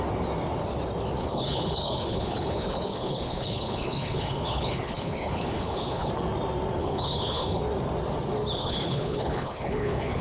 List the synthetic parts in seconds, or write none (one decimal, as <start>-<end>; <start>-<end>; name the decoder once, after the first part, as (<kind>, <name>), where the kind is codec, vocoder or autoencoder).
1.2-6.1 (codec, HILCodec); 6.8-7.6; 8.6-10.2

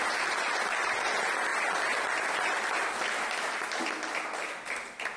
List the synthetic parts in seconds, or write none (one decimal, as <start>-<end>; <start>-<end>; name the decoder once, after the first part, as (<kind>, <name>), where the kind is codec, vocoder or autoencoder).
none

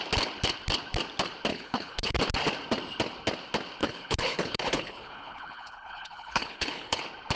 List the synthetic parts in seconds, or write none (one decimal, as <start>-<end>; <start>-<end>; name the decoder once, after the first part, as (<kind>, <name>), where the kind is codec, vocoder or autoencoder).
1.5-2.2 (codec, HILCodec); 3.8-7.0

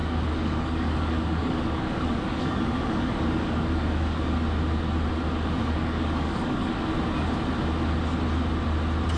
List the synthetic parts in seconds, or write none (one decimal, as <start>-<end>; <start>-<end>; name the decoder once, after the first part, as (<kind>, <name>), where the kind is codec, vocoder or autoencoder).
0.0-4.3 (codec, DAC); 5.6-6.8